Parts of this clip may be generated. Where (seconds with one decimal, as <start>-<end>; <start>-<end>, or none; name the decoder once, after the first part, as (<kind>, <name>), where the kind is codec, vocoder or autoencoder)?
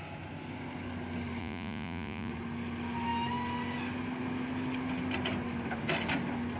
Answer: 1.4-2.3 (vocoder, Vocos)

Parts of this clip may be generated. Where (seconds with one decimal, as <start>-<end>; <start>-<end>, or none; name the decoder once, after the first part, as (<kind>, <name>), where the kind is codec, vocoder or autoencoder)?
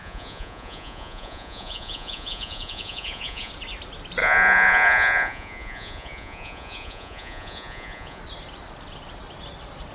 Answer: 0.0-3.5 (vocoder, Vocos); 4.2-8.2